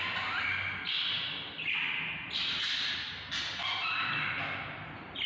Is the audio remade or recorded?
recorded